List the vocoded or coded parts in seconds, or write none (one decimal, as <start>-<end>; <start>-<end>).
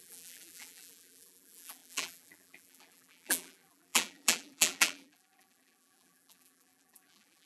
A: 0.0-7.5